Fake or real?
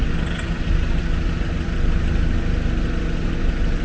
real